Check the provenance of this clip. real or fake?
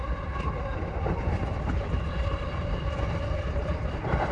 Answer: fake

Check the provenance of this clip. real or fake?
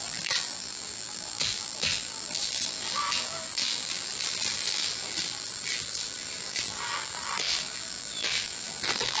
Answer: fake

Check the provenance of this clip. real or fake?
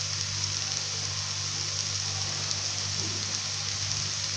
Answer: real